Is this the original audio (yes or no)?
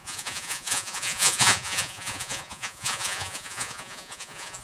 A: no